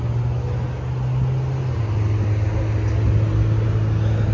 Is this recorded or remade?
recorded